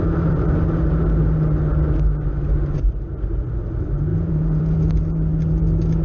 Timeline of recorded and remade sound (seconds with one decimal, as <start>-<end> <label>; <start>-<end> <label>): 0.0-4.1 recorded; 4.1-4.6 remade; 4.6-6.0 recorded